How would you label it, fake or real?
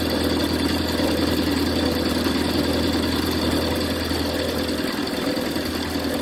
real